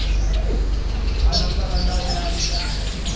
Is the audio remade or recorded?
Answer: recorded